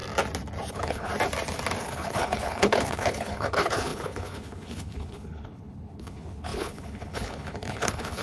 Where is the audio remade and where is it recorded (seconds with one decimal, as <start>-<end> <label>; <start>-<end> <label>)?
0.0-0.7 recorded; 0.7-1.1 remade; 1.1-1.8 recorded; 1.8-8.2 remade